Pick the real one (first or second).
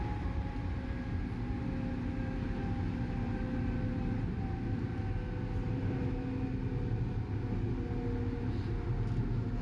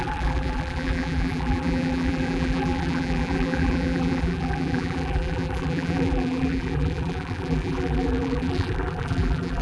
first